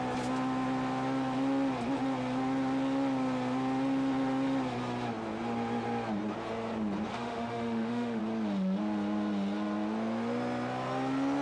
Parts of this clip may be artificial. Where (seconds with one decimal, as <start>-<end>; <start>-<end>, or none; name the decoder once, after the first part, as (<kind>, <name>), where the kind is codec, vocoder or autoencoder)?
7.1-8.2 (autoencoder, DAC-VAE)

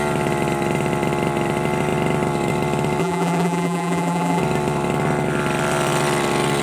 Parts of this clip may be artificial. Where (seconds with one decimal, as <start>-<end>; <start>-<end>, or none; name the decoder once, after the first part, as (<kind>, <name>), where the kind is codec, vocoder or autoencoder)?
3.0-4.4 (vocoder, BigVGAN v2)

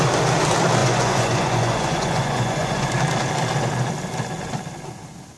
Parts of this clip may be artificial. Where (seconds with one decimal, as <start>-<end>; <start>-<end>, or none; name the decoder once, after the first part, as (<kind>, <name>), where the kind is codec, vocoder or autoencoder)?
0.8-2.9 (vocoder, Vocos)